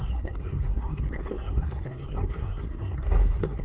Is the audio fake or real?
fake